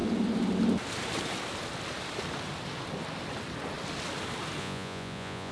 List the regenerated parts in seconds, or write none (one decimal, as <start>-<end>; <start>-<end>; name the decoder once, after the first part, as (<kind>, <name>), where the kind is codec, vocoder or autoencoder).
4.6-5.5 (vocoder, Vocos)